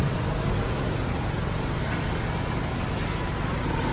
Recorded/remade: recorded